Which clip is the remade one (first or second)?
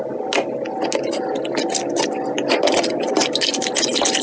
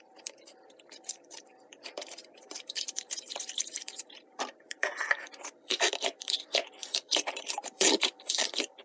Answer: second